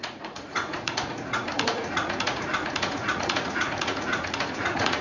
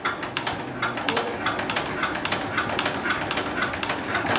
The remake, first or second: first